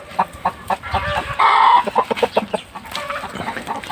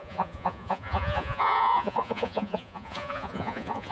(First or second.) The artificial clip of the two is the second